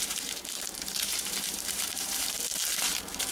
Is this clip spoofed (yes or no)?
yes